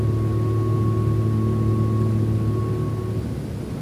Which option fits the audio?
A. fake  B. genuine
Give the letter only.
B